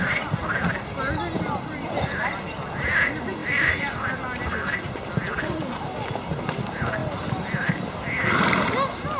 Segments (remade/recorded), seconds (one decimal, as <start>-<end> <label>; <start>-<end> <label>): 0.0-3.4 recorded; 3.4-5.1 remade; 5.1-9.2 recorded